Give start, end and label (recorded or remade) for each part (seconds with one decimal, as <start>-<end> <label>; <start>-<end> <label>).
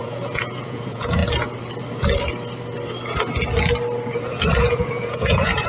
0.0-1.2 remade; 1.2-4.6 recorded; 4.6-5.7 remade